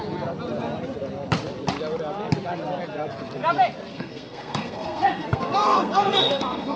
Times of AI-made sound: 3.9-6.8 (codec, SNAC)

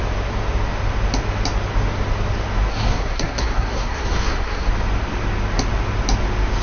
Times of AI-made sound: 2.7-4.7 (codec, SNAC)

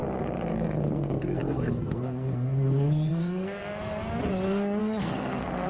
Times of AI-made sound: 0.8-3.6 (codec, SNAC); 4.8-5.7